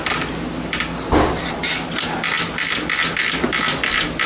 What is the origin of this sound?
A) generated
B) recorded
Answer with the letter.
B